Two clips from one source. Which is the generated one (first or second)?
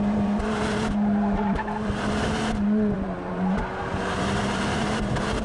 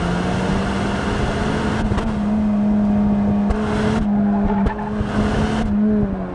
first